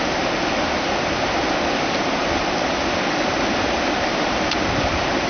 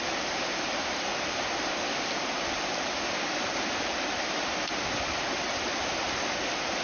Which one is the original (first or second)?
first